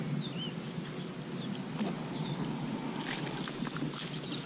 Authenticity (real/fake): real